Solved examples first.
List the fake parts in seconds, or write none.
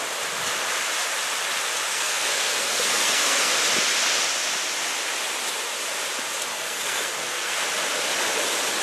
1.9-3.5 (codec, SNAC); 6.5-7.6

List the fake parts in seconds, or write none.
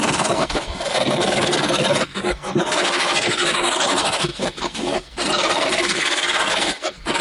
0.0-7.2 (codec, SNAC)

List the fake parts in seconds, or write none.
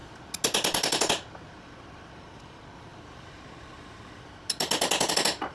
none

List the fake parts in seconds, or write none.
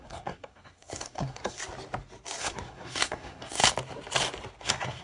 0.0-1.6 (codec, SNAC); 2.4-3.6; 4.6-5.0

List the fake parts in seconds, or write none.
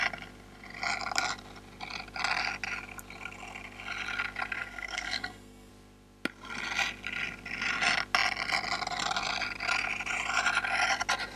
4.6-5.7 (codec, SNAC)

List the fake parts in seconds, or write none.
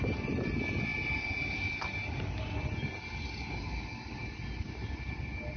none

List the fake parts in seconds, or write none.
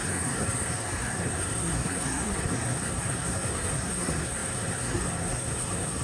0.0-6.0 (codec, SNAC)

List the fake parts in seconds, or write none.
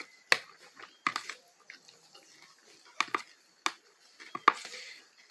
none